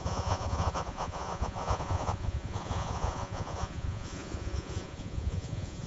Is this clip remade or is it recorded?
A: remade